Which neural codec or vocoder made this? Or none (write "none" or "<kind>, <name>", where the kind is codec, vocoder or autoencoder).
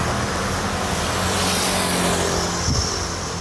none